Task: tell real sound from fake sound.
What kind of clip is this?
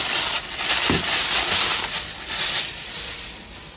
real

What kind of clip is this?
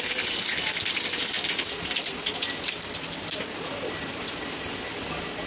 real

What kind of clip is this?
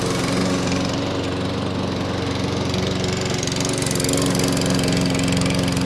real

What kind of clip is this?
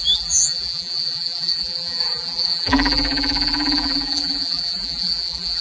fake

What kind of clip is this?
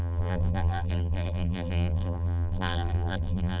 fake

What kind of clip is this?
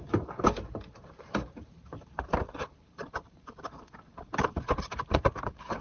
fake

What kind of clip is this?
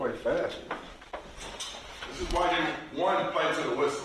real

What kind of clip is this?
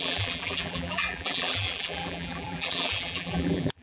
fake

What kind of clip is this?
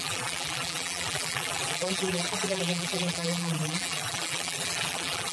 fake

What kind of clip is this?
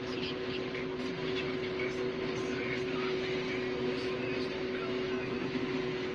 real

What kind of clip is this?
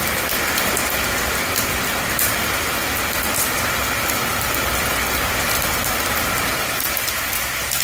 real